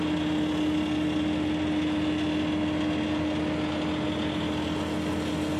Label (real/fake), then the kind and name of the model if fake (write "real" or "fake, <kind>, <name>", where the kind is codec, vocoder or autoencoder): real